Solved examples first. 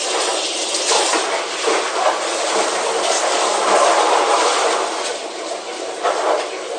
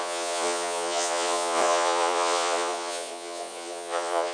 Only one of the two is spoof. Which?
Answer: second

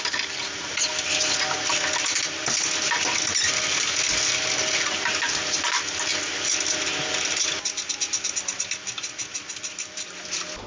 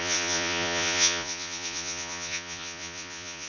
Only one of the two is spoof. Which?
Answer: second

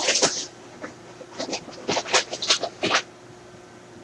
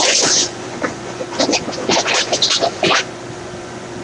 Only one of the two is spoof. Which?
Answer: second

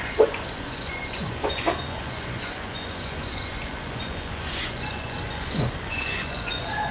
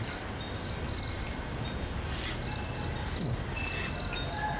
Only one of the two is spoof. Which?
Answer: first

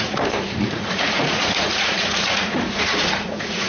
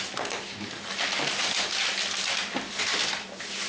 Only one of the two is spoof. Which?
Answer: first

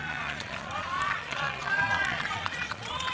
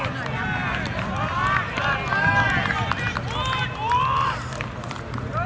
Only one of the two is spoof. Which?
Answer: first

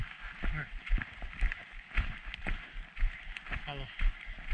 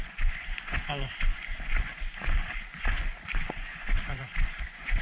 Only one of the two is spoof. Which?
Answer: second